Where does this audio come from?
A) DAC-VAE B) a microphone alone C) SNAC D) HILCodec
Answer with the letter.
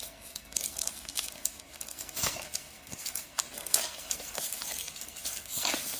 C